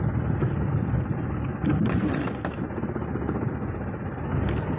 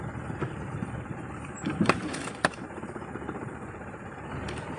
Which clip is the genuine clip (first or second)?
first